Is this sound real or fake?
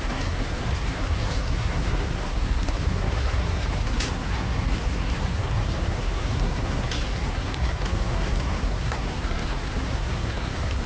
fake